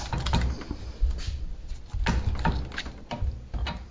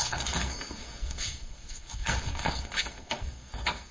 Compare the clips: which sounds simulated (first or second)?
second